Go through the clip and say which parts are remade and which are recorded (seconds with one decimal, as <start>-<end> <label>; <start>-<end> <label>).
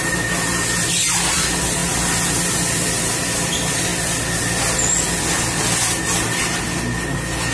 0.0-7.5 recorded